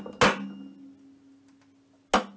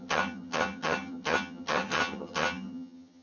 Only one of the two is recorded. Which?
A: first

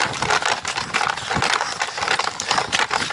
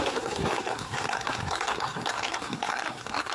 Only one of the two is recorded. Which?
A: first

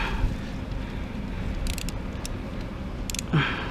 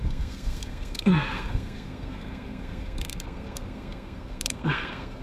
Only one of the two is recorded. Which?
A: first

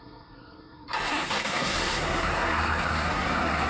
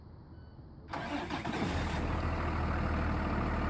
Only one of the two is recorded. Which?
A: second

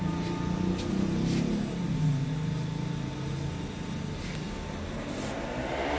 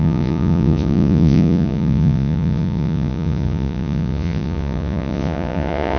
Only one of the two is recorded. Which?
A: first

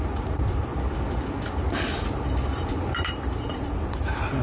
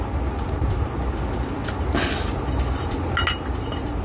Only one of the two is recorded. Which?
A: second